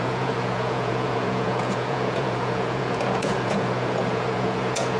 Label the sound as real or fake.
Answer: fake